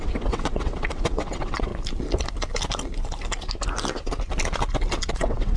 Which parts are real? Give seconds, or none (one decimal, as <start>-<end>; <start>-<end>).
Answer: 1.7-5.1